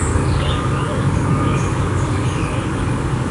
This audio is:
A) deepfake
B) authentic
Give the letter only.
A